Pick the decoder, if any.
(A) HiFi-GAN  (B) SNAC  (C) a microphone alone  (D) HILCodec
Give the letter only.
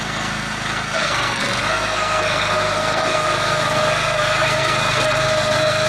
B